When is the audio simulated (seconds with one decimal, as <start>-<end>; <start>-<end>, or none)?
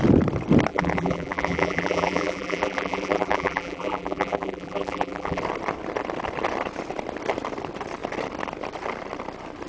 0.7-5.4